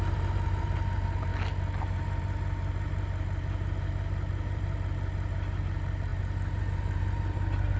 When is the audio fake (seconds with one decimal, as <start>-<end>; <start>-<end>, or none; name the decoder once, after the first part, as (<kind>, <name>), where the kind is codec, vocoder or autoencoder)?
0.0-1.3 (vocoder, BigVGAN v2); 1.8-7.8